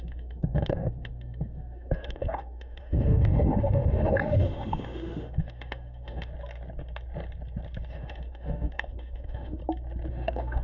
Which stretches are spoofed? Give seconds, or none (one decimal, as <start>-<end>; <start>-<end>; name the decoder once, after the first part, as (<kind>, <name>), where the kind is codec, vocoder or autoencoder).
0.0-6.3 (autoencoder, DAC-VAE); 7.9-9.6; 10.1-10.6